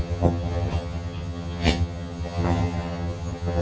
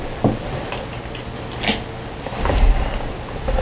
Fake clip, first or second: first